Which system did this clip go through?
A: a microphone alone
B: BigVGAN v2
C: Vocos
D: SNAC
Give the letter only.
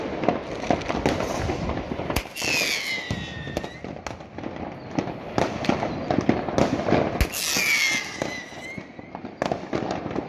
A